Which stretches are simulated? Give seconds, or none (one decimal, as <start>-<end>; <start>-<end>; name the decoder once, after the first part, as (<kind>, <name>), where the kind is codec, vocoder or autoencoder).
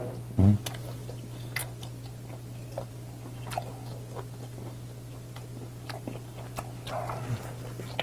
none